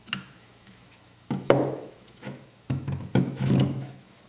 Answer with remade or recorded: remade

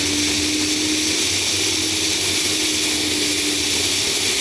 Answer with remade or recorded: recorded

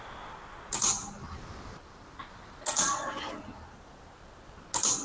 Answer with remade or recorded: recorded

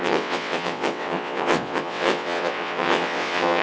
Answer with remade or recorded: remade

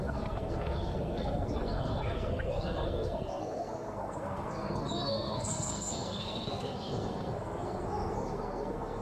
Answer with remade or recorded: remade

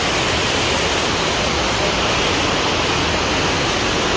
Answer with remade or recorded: recorded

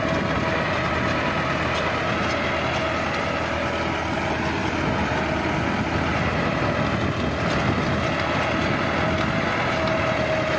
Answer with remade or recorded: recorded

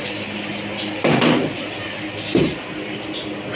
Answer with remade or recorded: recorded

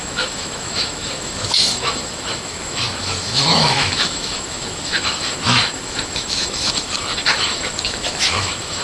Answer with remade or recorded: remade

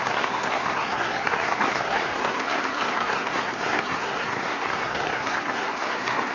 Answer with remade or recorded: remade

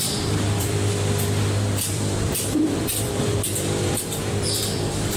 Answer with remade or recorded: remade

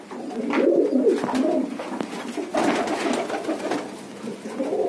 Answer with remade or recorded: recorded